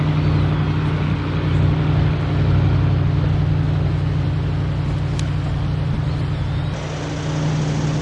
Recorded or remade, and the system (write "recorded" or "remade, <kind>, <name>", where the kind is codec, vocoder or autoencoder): recorded